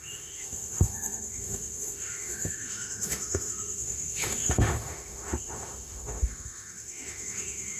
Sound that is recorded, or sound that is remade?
remade